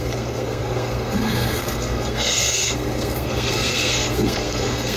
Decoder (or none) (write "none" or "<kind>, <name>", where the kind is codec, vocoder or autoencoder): codec, SNAC